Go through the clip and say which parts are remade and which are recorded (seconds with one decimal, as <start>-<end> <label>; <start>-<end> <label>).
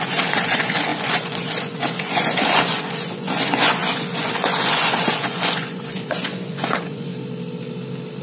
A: 0.0-7.1 remade; 7.1-8.2 recorded